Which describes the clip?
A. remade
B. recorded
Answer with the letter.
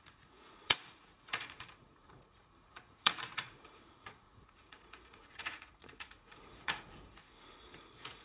A